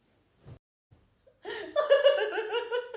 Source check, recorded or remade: recorded